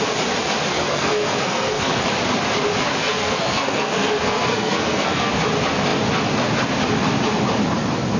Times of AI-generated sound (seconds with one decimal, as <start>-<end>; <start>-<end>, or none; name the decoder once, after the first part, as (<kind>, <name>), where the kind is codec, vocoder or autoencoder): 0.7-2.0 (codec, SNAC); 3.0-5.3